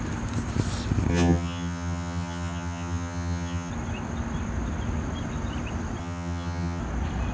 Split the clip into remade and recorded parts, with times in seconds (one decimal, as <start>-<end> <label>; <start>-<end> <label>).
0.0-1.1 recorded; 1.1-3.7 remade; 3.7-6.0 recorded; 6.0-6.8 remade; 6.8-7.3 recorded